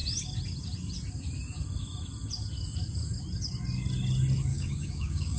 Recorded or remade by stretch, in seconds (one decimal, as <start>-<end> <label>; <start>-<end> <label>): 0.0-4.5 recorded; 4.5-5.4 remade